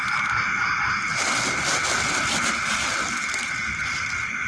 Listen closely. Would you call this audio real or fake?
real